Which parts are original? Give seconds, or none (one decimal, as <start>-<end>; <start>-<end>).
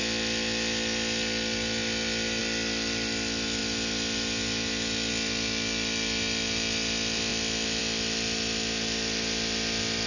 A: 0.0-10.1